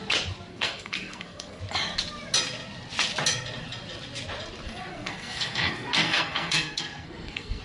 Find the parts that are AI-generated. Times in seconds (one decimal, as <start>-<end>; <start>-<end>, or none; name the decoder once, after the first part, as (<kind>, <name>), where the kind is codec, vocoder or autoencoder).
0.5-1.6 (codec, SNAC); 4.9-7.6